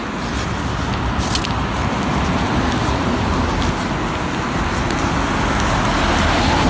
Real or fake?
real